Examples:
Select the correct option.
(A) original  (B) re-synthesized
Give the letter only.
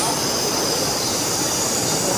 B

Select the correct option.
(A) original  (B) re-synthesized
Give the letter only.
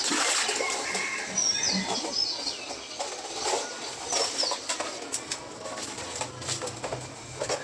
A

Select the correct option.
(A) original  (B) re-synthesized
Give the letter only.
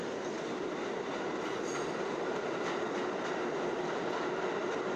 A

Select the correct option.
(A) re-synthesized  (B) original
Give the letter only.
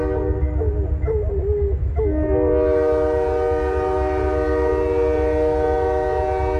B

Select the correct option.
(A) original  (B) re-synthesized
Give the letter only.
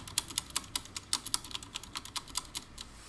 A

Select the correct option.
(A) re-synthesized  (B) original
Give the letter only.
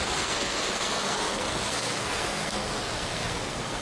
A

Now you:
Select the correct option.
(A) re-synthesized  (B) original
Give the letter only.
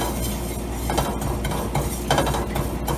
B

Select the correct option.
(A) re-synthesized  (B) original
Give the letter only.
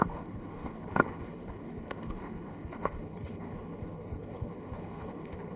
A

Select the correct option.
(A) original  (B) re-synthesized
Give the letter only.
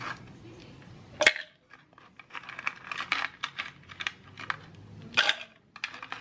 A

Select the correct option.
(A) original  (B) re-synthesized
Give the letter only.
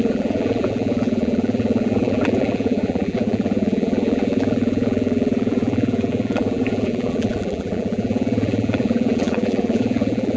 B